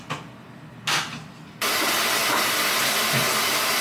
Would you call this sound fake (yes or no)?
no